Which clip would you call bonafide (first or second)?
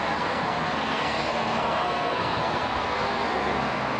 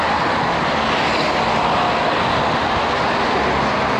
second